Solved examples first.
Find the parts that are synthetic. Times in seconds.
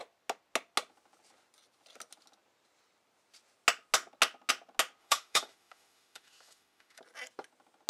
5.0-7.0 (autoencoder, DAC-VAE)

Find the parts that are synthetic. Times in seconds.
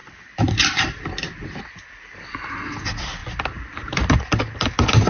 0.0-2.5 (vocoder, BigVGAN v2); 3.2-4.2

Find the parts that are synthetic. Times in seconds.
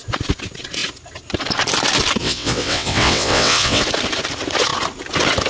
2.2-3.8 (vocoder, WaveNeXt)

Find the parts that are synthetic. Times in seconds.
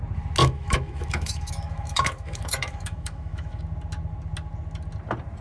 0.4-3.6 (autoencoder, DAC-VAE)